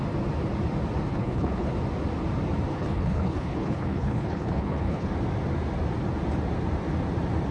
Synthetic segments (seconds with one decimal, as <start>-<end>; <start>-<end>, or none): 1.1-1.7; 2.7-5.1